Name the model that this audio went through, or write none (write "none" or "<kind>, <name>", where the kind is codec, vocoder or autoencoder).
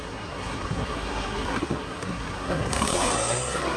codec, SNAC